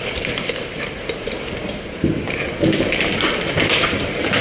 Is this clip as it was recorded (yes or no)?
no